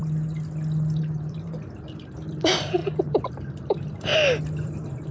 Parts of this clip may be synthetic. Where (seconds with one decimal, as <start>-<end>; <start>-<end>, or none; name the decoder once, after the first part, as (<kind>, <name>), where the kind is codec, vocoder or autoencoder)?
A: 1.0-4.1 (vocoder, BigVGAN v2); 4.6-5.1